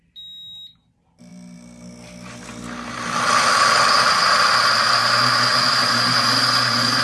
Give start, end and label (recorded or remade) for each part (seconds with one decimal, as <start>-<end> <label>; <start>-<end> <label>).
0.0-7.0 recorded